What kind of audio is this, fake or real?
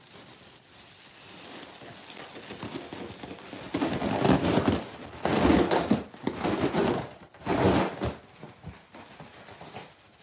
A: real